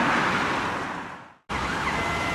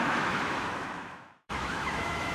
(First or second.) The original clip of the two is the first